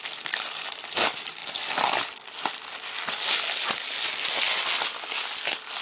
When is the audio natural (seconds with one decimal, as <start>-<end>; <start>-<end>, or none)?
0.0-5.8